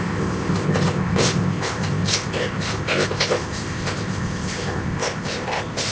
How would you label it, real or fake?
fake